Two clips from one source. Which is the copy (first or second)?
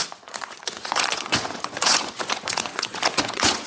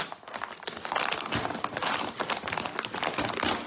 first